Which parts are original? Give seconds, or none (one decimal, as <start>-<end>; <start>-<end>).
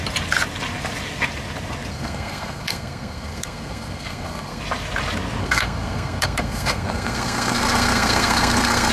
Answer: 0.0-1.9; 4.6-5.4